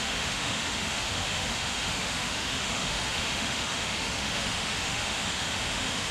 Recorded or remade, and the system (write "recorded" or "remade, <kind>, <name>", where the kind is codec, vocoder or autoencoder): remade, autoencoder, DAC-VAE